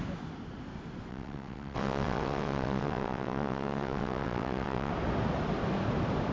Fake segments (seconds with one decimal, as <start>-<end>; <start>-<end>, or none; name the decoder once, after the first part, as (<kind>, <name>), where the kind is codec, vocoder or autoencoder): 1.1-4.9 (vocoder, WaveNeXt)